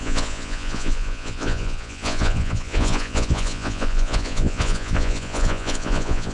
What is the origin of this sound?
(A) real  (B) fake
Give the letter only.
B